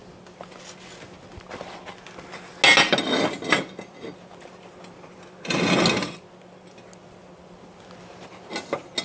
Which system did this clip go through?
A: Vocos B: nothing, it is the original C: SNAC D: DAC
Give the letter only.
B